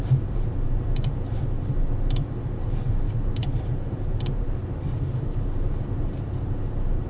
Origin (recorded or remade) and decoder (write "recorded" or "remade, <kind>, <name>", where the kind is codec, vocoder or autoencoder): remade, vocoder, BigVGAN v2